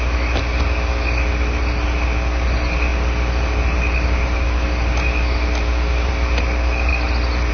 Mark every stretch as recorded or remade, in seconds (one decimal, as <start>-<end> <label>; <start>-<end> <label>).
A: 0.0-2.9 recorded; 2.9-4.9 remade; 4.9-6.9 recorded; 6.9-7.5 remade